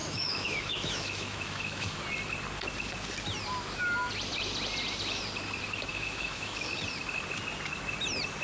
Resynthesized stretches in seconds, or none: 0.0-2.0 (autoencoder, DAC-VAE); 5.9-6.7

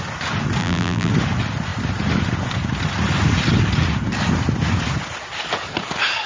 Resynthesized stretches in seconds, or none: 0.6-1.1 (vocoder, BigVGAN v2)